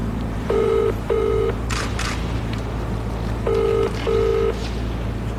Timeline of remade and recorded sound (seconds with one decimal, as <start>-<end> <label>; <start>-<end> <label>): 0.0-2.4 remade; 2.4-5.4 recorded